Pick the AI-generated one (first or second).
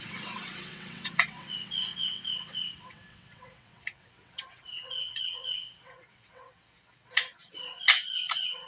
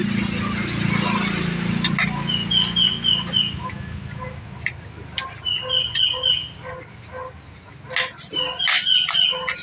first